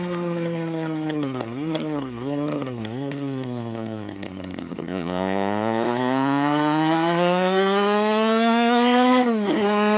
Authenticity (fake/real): fake